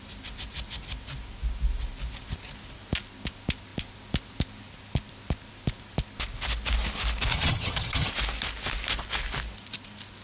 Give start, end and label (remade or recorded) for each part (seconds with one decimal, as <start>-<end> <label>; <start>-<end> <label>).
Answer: 0.0-7.3 recorded; 7.3-8.1 remade; 8.1-10.2 recorded